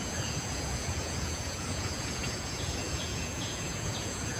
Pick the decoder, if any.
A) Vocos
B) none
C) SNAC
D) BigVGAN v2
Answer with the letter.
A